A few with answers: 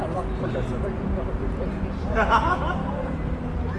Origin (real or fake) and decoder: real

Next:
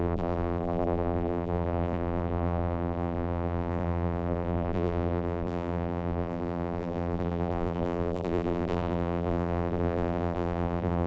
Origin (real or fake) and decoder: fake, vocoder, BigVGAN v2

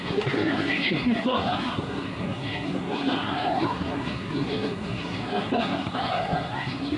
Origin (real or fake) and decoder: fake, codec, SNAC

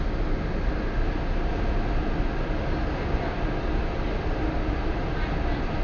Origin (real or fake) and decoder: real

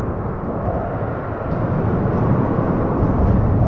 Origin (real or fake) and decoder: real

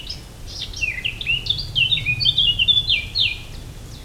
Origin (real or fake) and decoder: real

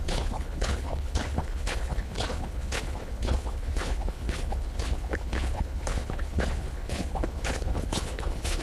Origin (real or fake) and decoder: fake, codec, HILCodec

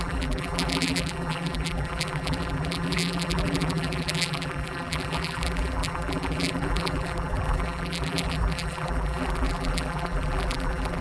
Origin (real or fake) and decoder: fake, vocoder, BigVGAN v2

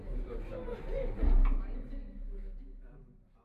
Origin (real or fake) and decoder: real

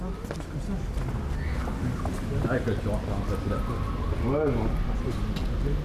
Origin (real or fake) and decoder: real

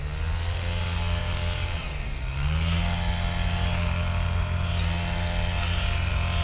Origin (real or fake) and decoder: real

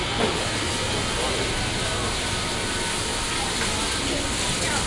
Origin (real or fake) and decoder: real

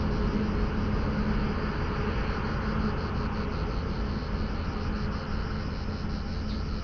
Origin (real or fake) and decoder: real